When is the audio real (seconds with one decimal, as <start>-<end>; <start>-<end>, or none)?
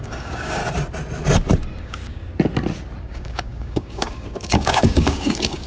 0.6-1.8; 2.2-3.0